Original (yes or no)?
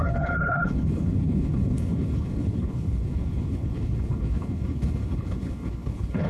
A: no